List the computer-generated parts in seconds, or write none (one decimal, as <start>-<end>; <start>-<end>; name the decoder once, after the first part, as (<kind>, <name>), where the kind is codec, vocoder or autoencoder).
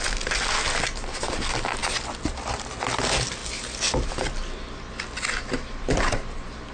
none